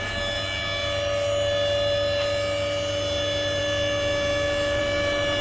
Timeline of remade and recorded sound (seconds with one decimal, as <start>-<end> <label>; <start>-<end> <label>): 0.0-5.4 recorded